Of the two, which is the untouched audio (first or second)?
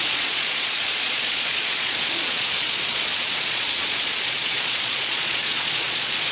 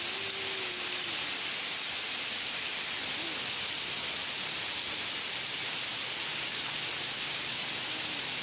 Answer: second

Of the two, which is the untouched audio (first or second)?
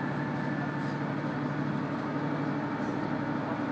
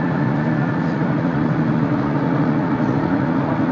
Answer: first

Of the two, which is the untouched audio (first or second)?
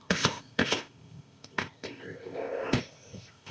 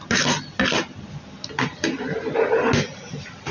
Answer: second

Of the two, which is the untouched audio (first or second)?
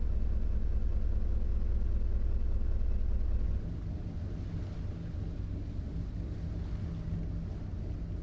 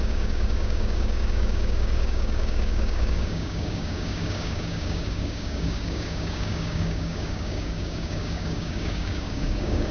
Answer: first